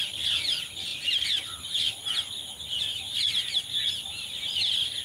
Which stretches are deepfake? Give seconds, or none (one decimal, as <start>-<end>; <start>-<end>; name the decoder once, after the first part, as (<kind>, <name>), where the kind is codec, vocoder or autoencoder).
none